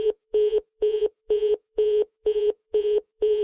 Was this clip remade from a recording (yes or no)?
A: yes